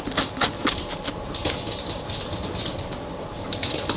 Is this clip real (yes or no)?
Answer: yes